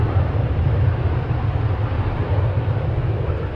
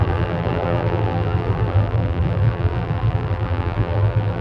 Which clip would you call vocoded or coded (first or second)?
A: second